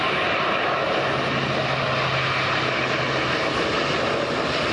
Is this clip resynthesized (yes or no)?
no